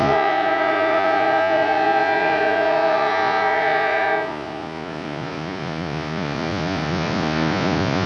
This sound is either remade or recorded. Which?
remade